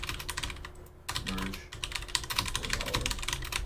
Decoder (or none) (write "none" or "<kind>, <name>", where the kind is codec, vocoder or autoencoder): none